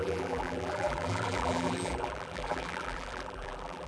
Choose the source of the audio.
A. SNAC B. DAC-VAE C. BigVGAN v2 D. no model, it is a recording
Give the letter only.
C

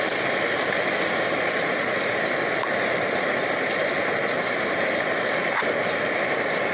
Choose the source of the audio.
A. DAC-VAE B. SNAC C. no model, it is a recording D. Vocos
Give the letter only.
C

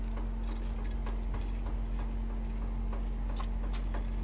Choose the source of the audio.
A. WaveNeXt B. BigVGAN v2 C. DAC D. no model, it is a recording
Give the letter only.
D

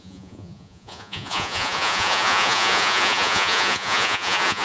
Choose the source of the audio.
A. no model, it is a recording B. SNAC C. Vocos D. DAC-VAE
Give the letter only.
C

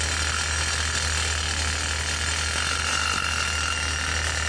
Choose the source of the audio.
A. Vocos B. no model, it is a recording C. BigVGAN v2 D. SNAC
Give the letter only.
B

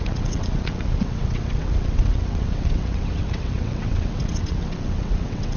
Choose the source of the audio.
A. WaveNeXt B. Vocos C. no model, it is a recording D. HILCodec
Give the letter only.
A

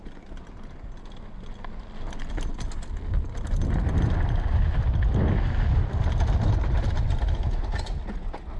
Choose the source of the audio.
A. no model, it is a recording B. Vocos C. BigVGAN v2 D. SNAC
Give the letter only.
A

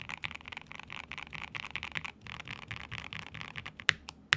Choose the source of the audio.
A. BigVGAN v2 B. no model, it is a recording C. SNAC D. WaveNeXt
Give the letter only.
B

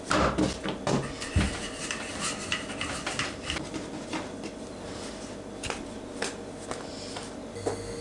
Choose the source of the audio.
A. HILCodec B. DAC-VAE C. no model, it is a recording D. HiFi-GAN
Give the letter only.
C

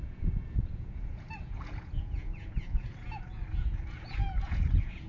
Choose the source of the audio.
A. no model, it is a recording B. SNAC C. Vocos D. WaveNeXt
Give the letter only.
C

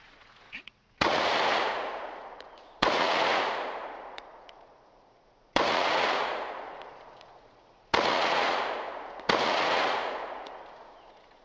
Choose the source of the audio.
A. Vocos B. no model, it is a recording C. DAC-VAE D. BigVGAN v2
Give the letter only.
A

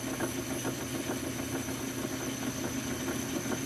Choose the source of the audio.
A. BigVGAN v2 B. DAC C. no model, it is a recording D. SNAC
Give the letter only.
C